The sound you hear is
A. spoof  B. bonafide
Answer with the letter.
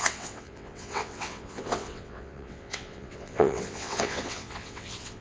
A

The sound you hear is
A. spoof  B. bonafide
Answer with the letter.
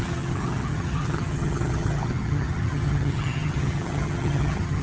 A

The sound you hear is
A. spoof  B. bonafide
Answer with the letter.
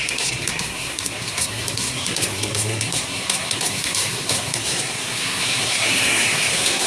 A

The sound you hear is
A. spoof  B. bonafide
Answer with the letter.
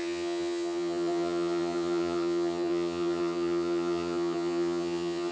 A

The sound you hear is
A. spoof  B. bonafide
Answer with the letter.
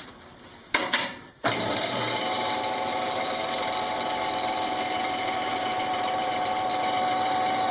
A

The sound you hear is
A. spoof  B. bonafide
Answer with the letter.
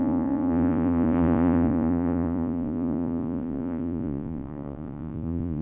A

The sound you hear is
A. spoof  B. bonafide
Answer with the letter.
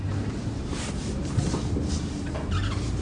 A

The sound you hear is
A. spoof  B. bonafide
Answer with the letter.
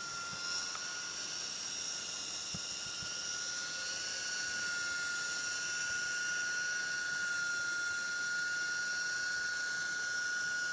B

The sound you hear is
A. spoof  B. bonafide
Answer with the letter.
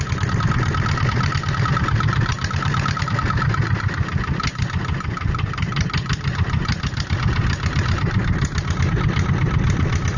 B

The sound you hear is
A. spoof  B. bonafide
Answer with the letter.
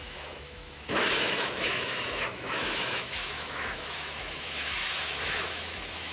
A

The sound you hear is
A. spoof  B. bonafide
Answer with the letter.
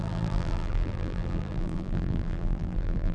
A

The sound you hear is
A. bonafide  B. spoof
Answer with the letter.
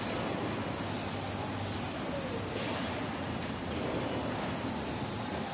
A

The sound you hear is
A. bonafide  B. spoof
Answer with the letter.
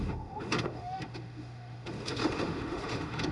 B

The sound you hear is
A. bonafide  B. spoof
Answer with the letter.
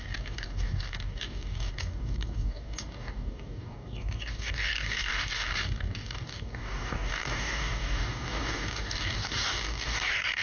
B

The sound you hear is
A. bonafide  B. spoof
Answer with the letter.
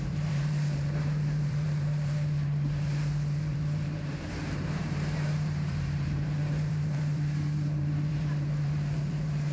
B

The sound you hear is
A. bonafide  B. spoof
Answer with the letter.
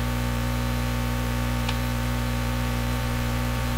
B